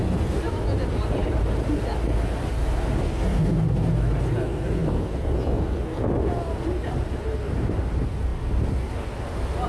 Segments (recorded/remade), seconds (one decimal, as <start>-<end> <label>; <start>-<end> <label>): 0.0-9.7 recorded